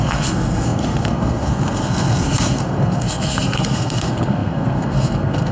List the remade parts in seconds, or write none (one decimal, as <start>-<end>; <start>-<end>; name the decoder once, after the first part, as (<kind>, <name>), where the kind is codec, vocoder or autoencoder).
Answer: 0.0-5.5 (codec, SNAC)